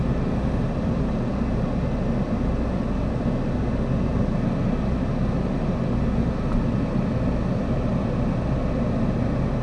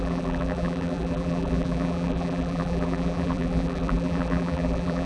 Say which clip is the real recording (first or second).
first